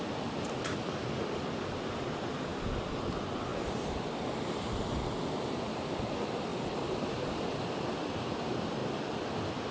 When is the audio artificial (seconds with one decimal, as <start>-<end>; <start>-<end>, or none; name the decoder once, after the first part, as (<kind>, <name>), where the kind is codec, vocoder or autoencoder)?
6.5-8.4 (vocoder, BigVGAN v2)